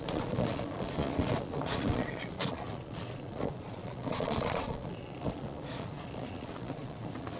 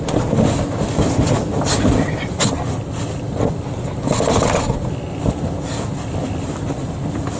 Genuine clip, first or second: second